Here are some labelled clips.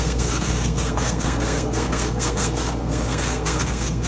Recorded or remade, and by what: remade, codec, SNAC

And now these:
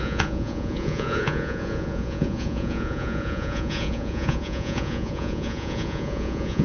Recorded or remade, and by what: remade, vocoder, Vocos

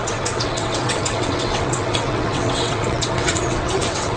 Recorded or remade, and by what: remade, vocoder, WaveNeXt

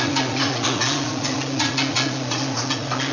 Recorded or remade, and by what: remade, vocoder, Vocos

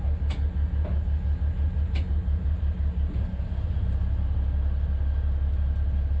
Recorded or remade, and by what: recorded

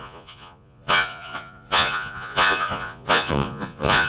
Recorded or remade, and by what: remade, vocoder, Vocos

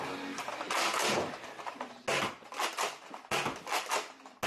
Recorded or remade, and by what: recorded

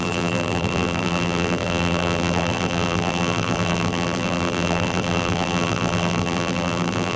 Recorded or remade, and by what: remade, vocoder, BigVGAN v2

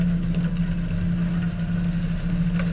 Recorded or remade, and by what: recorded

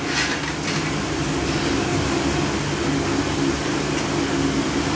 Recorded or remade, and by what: recorded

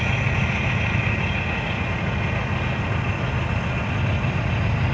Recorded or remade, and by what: recorded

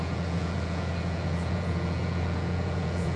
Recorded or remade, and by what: remade, vocoder, Vocos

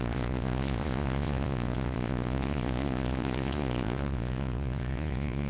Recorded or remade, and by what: remade, vocoder, Vocos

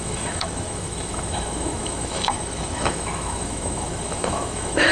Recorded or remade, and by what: remade, autoencoder, DAC-VAE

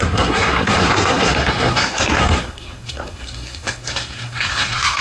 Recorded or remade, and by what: remade, codec, SNAC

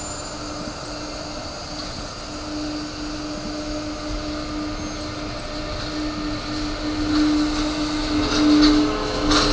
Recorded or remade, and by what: recorded